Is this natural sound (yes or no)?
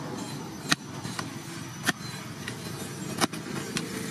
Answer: yes